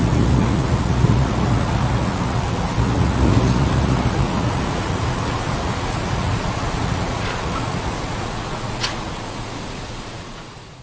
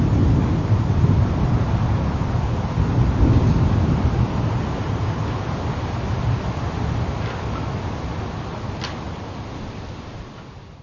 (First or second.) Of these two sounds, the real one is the second